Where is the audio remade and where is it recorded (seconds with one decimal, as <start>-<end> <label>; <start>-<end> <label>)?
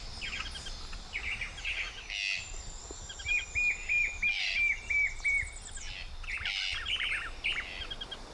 0.0-3.8 recorded; 3.8-4.5 remade; 4.5-8.3 recorded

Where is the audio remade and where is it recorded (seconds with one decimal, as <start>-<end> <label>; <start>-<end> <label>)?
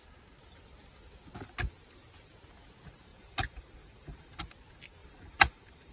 0.0-3.1 recorded; 3.1-4.4 remade; 4.4-5.0 recorded; 5.0-5.9 remade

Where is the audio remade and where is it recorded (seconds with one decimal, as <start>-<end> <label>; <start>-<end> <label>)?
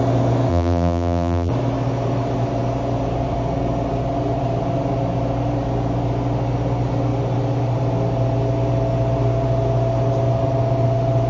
0.0-0.5 recorded; 0.5-1.5 remade; 1.5-11.3 recorded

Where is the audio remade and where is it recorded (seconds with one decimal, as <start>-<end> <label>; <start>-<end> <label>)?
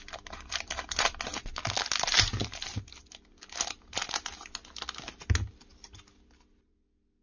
0.0-2.4 recorded; 2.4-3.1 remade; 3.1-7.2 recorded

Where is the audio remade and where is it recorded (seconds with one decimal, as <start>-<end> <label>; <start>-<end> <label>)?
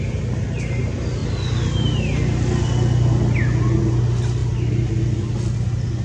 0.0-6.0 recorded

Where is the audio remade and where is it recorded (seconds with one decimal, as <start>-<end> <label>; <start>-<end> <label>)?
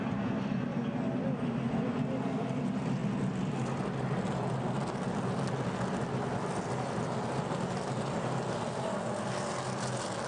0.0-10.3 recorded